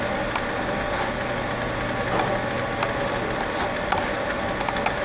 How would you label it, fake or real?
real